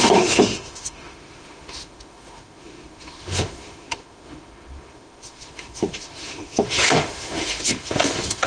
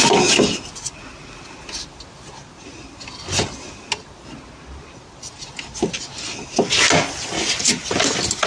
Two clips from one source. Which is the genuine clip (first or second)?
second